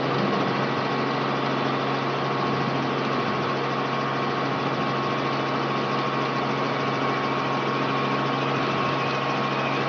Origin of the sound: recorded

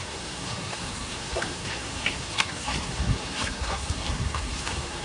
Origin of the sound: remade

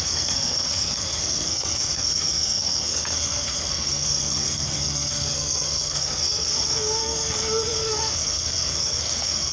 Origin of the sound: remade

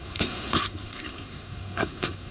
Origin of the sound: remade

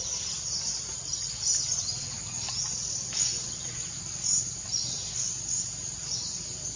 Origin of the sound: recorded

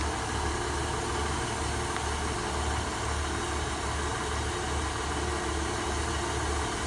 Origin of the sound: recorded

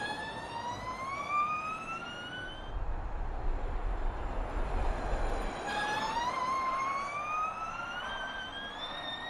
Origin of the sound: recorded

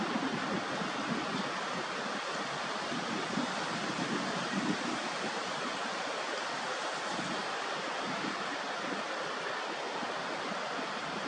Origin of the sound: recorded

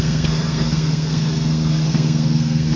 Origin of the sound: remade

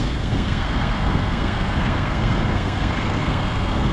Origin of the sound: remade